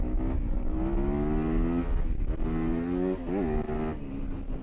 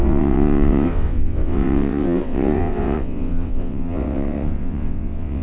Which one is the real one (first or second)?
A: first